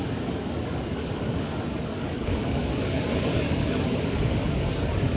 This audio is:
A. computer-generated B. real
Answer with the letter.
A